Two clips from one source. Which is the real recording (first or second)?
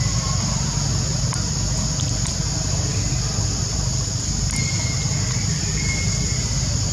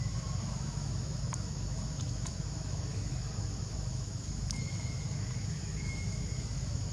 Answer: first